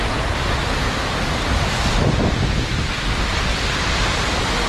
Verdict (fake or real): real